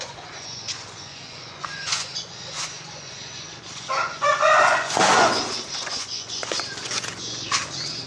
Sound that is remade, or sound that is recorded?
remade